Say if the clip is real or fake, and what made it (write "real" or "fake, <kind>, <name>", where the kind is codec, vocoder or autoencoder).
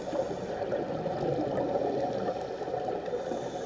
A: real